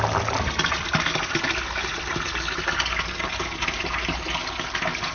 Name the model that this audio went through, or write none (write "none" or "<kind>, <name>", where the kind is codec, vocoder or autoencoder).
none